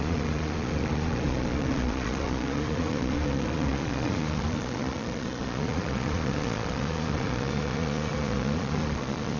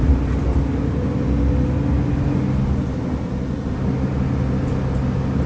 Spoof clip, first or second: first